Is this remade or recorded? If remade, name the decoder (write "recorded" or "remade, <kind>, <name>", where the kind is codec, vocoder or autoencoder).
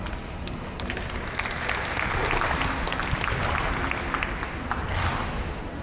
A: recorded